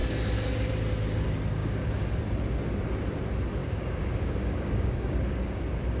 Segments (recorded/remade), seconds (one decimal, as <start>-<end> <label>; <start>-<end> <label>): 0.0-1.6 recorded; 1.6-2.2 remade; 2.2-3.6 recorded; 3.6-5.6 remade; 5.6-6.0 recorded